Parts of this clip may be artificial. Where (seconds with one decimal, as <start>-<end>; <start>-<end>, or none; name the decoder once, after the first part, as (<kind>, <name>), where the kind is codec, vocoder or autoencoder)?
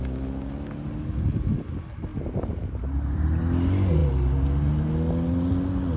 2.1-3.4 (vocoder, BigVGAN v2)